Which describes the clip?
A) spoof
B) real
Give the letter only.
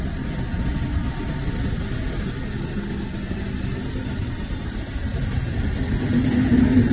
B